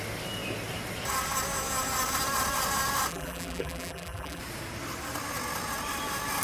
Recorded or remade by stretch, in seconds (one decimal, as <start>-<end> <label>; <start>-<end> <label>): 0.0-3.1 recorded; 3.1-4.4 remade; 4.4-6.4 recorded